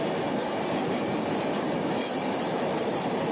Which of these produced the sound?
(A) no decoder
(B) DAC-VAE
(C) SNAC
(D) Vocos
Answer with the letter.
A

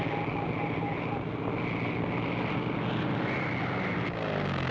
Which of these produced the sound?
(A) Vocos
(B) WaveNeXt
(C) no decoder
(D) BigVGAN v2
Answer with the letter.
C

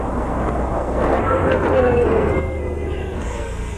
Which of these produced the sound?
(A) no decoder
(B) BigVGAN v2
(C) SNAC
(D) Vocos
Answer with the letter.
C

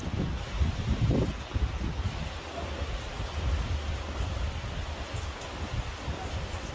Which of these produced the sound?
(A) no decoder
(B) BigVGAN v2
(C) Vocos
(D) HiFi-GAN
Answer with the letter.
A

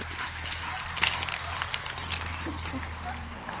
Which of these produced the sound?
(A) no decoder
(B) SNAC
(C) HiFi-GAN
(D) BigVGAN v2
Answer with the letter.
A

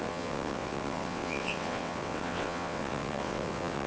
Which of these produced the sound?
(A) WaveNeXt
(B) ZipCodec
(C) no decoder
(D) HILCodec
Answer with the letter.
A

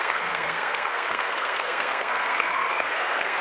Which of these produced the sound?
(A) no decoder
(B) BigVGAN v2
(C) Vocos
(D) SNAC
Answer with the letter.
D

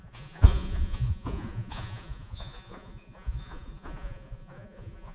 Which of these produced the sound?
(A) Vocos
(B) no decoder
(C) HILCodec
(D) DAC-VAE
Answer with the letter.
A